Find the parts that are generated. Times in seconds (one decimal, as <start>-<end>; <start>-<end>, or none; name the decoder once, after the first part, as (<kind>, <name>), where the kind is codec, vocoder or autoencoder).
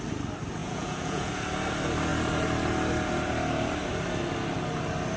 0.6-1.3 (vocoder, Vocos)